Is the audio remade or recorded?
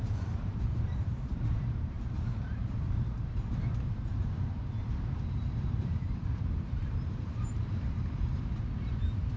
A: remade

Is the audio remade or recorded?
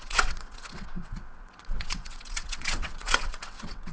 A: remade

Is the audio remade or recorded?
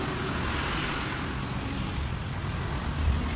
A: recorded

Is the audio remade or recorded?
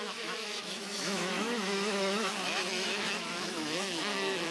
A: remade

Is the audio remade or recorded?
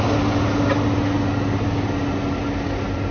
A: recorded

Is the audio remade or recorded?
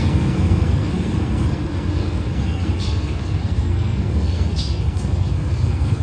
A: remade